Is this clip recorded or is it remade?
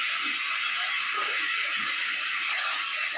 recorded